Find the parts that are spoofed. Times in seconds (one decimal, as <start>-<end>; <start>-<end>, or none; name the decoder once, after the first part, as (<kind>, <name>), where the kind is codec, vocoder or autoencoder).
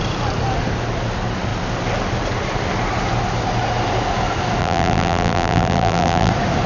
4.6-6.3 (vocoder, BigVGAN v2)